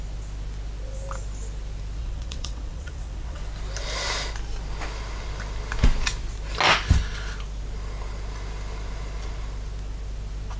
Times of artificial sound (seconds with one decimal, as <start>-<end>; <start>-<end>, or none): 2.0-3.4

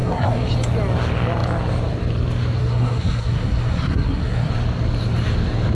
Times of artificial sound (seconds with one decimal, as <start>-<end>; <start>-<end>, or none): 0.0-0.5; 2.6-4.5

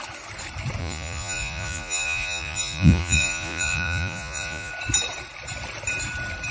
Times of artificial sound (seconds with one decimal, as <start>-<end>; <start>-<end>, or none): 0.8-4.7

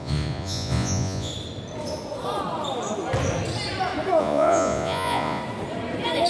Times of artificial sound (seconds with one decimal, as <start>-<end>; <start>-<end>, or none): 0.0-1.3; 4.2-5.4

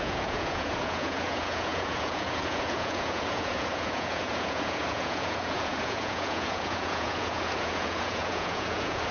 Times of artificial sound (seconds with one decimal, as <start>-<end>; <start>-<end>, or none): 0.0-9.1

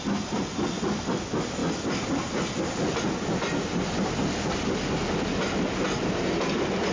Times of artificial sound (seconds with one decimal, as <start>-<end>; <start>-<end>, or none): none

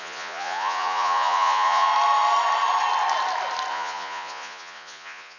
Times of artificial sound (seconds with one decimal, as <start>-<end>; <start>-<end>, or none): 0.0-1.9; 3.7-5.4